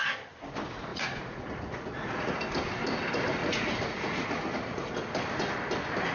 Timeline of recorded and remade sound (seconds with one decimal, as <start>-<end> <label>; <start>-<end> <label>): 0.0-0.9 recorded; 0.9-2.4 remade; 2.4-3.4 recorded; 3.4-4.9 remade; 4.9-6.1 recorded